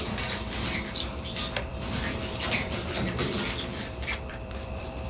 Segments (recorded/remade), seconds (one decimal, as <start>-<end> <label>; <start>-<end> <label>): 0.0-1.7 recorded; 1.7-5.1 remade